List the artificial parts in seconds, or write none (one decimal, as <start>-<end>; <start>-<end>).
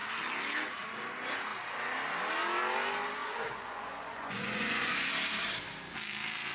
3.2-5.1